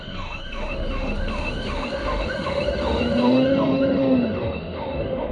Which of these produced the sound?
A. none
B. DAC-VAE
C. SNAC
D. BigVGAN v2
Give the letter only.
B